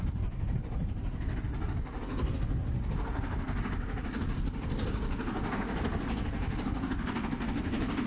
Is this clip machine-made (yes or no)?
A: no